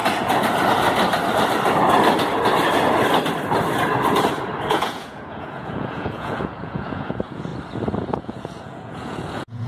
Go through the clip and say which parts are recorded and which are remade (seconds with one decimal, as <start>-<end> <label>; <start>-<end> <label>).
0.0-4.7 recorded; 4.7-7.5 remade; 7.5-8.1 recorded; 8.1-9.7 remade